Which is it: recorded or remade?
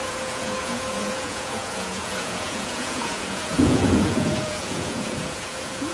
remade